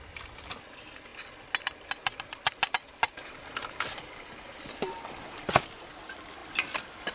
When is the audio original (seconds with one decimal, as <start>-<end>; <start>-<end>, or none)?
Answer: 0.0-7.1